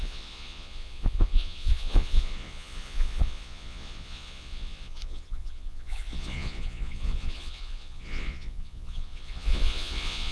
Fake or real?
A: fake